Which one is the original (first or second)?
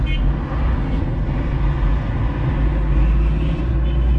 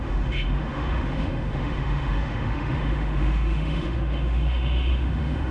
first